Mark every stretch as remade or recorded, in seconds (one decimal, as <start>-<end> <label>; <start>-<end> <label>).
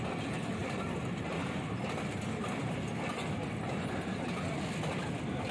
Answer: 0.0-0.6 recorded; 0.6-3.9 remade; 3.9-5.5 recorded